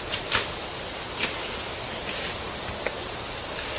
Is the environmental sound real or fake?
real